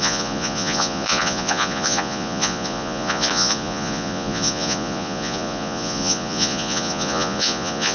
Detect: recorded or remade remade